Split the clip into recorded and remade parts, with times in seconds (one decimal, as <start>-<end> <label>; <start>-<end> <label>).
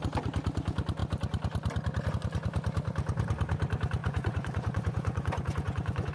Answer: 0.0-4.0 recorded; 4.0-6.1 remade